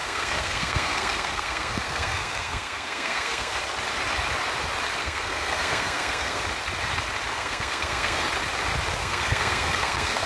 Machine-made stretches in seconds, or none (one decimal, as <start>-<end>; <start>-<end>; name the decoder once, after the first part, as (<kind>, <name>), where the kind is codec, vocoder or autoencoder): 0.0-3.6 (codec, SNAC); 5.0-6.4; 7.3-8.3; 9.0-10.3